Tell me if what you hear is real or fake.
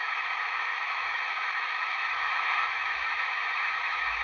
fake